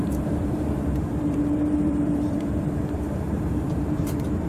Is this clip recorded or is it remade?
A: remade